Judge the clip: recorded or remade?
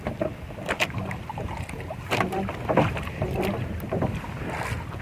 recorded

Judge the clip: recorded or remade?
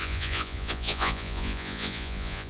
remade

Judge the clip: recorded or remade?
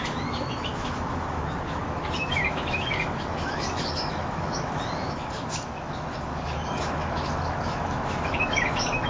remade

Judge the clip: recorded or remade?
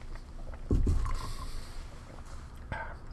recorded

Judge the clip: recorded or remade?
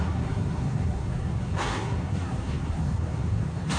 remade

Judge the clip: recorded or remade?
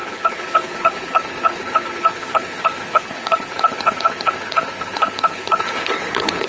remade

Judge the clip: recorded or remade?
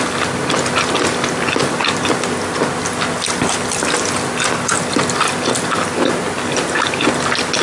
recorded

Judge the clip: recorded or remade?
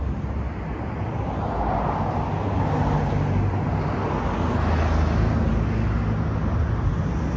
recorded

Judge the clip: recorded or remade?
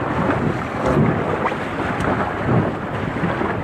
recorded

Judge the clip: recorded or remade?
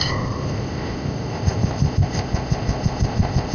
remade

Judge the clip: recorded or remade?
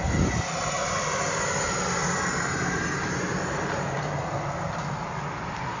recorded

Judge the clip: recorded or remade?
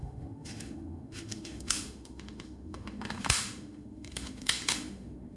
remade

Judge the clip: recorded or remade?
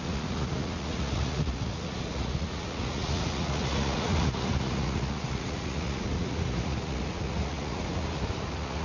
remade